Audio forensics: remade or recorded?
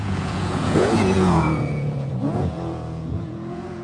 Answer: remade